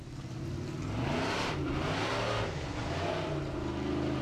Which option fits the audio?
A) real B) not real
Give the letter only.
A